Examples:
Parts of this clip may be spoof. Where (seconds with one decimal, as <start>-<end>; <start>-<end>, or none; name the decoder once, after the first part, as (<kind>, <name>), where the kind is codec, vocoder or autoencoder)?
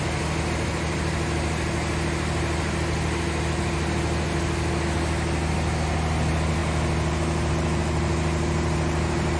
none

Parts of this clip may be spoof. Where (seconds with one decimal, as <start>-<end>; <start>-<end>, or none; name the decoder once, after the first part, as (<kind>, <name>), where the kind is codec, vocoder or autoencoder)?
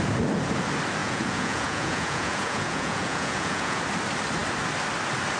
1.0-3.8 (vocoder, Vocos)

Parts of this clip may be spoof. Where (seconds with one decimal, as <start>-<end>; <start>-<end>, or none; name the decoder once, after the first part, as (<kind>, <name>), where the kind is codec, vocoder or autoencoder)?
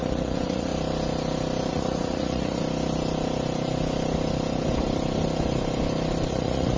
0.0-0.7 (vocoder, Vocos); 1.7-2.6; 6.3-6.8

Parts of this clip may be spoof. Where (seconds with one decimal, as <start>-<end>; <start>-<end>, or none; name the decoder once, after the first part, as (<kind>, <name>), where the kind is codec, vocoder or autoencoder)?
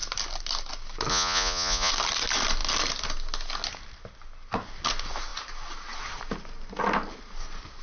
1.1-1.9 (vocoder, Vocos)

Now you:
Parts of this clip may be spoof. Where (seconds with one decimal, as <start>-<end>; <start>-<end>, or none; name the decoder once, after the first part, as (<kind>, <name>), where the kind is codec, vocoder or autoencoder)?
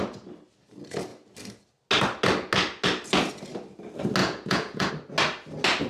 4.2-4.9 (vocoder, Vocos)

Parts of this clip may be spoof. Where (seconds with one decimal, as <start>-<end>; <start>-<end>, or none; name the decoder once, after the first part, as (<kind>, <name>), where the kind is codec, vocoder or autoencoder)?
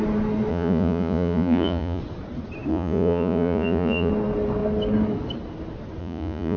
0.5-2.0 (vocoder, Vocos); 2.7-4.1; 6.0-6.6